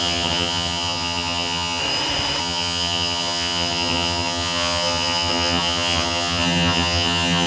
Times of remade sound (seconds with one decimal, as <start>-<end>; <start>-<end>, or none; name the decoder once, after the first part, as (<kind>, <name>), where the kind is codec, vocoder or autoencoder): 0.0-1.8 (vocoder, HiFi-GAN); 2.4-7.5